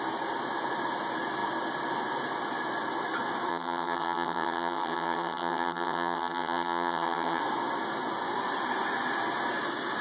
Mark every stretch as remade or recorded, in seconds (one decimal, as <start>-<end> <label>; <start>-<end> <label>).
0.0-3.5 recorded; 3.5-7.4 remade; 7.4-10.0 recorded